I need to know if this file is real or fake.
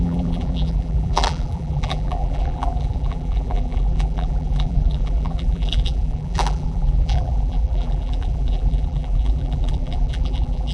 fake